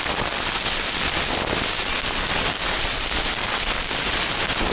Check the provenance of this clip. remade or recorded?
recorded